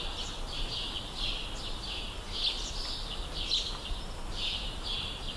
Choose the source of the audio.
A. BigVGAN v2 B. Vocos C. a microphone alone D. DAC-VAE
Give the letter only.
A